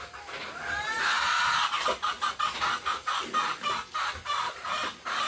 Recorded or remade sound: recorded